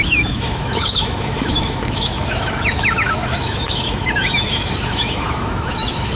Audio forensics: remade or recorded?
remade